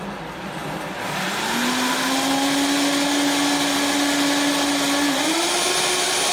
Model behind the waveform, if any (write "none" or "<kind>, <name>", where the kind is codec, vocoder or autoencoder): none